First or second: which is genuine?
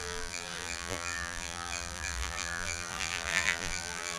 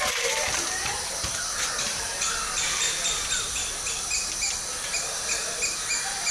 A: second